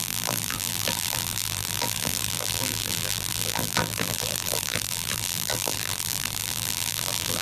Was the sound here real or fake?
fake